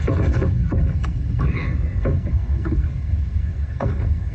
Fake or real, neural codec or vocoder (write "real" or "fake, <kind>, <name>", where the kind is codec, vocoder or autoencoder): fake, codec, SNAC